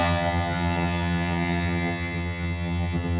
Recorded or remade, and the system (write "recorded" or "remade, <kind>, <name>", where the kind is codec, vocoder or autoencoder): remade, vocoder, HiFi-GAN